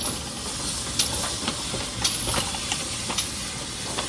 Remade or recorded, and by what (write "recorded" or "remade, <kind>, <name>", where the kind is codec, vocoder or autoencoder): recorded